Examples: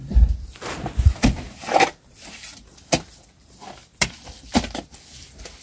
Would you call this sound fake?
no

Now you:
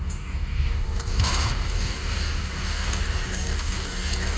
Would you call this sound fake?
yes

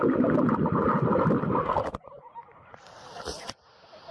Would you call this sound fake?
no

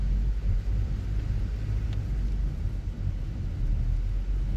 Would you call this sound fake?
no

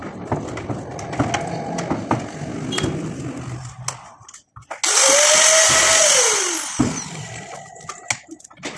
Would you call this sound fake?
no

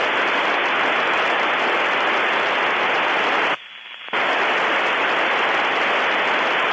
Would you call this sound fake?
no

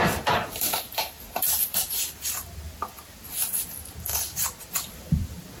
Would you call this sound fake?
yes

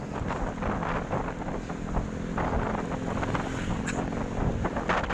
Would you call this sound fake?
no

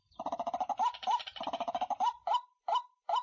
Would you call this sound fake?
yes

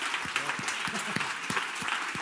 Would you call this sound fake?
no